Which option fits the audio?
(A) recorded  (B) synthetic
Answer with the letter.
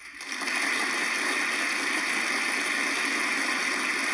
A